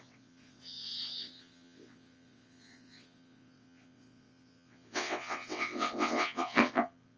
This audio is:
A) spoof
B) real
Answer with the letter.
A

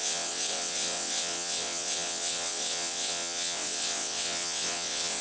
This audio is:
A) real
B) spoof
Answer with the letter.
B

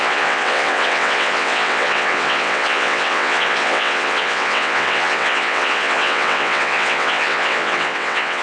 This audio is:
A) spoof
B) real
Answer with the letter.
A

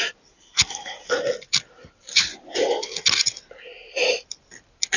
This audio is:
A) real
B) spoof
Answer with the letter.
A